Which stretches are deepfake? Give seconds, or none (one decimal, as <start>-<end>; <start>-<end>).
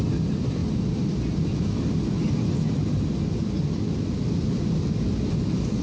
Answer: none